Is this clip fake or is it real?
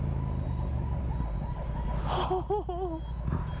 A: real